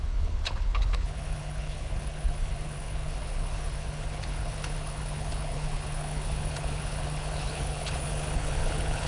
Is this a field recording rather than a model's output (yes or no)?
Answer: no